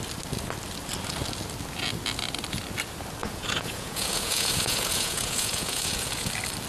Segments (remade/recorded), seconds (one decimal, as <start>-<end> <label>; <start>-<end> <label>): 0.0-3.2 recorded; 3.2-6.3 remade; 6.3-6.7 recorded